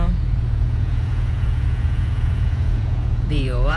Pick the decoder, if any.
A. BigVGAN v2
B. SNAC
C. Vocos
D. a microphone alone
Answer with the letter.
C